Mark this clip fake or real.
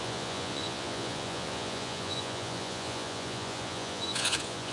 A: fake